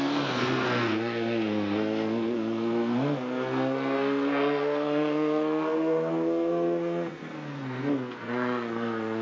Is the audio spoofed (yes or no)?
yes